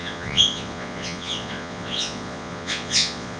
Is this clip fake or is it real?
fake